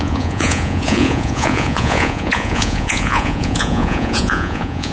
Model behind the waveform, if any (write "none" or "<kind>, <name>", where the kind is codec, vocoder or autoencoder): vocoder, Vocos